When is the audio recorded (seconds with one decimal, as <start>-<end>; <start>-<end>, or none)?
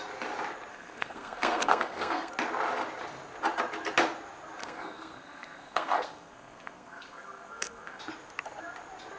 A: 0.0-0.7; 2.3-4.6; 8.0-9.2